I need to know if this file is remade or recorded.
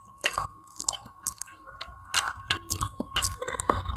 remade